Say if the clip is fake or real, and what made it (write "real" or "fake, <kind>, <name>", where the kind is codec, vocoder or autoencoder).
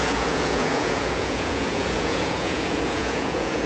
fake, vocoder, Vocos